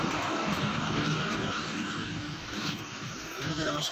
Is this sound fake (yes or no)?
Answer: yes